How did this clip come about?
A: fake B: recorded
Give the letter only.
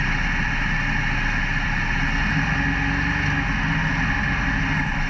B